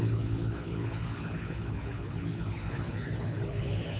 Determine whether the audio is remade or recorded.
remade